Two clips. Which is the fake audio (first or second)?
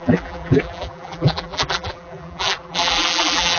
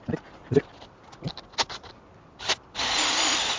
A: first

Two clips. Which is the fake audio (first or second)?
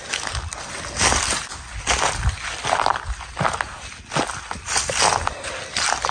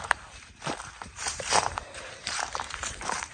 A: second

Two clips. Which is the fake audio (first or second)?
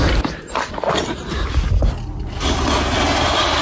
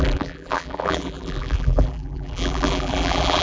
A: second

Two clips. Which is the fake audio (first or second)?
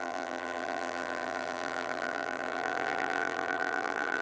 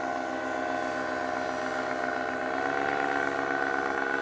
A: first